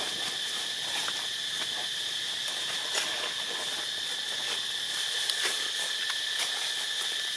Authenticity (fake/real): real